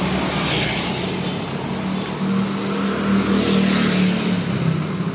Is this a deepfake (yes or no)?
no